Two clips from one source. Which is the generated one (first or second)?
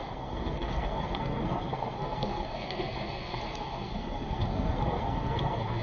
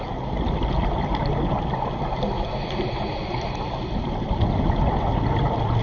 first